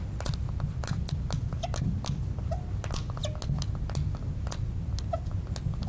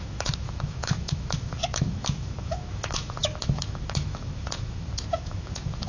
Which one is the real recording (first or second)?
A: first